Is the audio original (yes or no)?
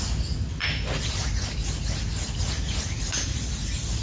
yes